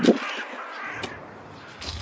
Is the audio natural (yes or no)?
yes